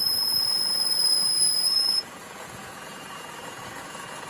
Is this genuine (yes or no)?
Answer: no